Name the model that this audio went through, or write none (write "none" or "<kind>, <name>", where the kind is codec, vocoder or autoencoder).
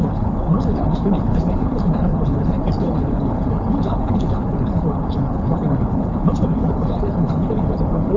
codec, HILCodec